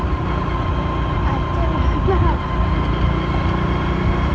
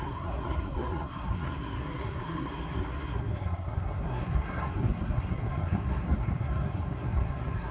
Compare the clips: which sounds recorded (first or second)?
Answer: first